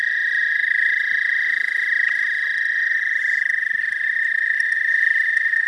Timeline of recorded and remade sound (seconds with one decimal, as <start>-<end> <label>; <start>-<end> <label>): 0.0-5.7 recorded